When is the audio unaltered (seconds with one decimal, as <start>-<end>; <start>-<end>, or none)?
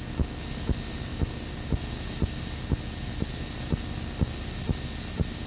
0.0-5.5